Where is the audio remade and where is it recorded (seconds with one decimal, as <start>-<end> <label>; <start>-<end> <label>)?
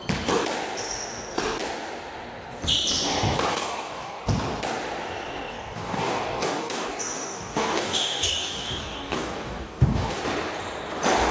0.0-3.5 recorded; 3.5-4.2 remade; 4.2-5.5 recorded; 5.5-10.2 remade; 10.2-11.3 recorded